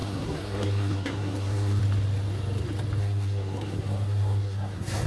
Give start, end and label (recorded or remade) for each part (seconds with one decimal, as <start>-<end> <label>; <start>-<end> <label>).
0.0-1.8 remade; 1.8-3.0 recorded; 3.0-5.1 remade